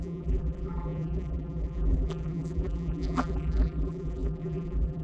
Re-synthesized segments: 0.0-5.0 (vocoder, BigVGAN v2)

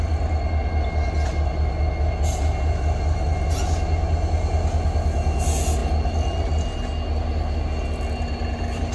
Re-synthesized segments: 5.8-6.8 (vocoder, BigVGAN v2)

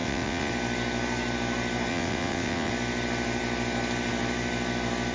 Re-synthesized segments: 0.0-0.5 (vocoder, WaveNeXt); 1.9-2.7

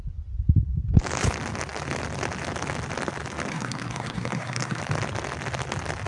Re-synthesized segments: 3.5-4.8 (codec, SNAC)